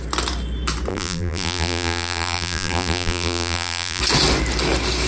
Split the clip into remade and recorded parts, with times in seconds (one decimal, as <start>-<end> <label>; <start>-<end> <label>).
0.0-0.9 recorded; 0.9-4.0 remade; 4.0-5.1 recorded